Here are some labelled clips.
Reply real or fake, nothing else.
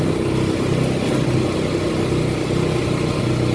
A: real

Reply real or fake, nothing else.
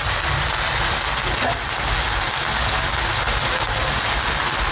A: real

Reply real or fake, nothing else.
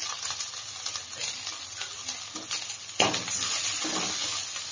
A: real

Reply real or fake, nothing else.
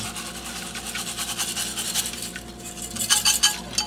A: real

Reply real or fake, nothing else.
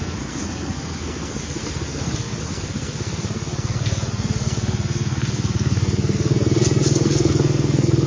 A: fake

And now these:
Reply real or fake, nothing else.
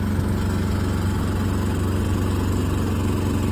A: real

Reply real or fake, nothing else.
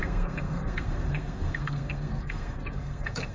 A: fake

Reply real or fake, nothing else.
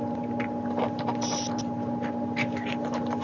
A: real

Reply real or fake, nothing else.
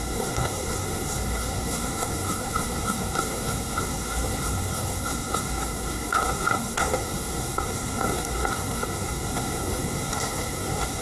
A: fake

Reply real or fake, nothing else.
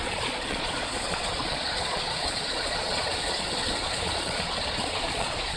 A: fake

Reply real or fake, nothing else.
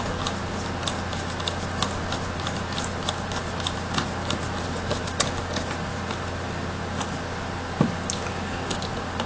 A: real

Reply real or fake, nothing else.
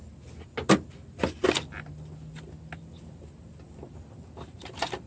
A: real